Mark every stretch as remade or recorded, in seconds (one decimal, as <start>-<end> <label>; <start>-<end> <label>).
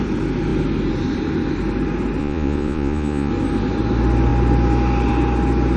0.0-2.2 recorded; 2.2-3.3 remade; 3.3-5.8 recorded